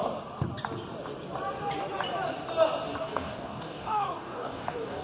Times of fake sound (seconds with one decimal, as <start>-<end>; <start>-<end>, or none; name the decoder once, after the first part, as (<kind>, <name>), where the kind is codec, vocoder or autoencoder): 3.0-5.0 (codec, DAC)